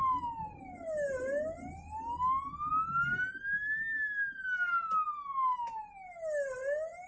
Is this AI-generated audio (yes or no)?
no